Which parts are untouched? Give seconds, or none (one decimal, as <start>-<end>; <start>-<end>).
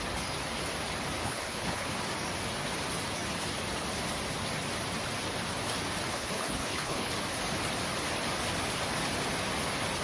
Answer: 0.0-1.2; 1.9-6.1; 7.1-10.0